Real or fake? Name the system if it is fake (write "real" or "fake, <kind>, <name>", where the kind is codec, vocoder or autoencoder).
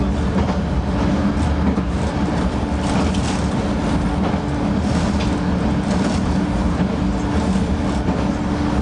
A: real